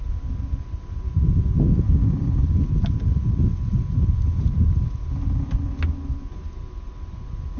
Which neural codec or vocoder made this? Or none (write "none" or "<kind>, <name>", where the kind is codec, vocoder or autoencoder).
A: none